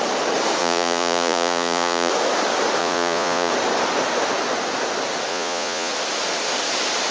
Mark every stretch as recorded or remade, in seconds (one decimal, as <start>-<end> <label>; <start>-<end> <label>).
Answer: 0.0-0.6 recorded; 0.6-2.1 remade; 2.1-2.8 recorded; 2.8-3.5 remade; 3.5-5.3 recorded; 5.3-5.9 remade; 5.9-7.1 recorded